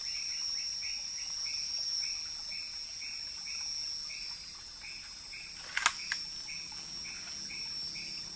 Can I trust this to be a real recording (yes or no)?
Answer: yes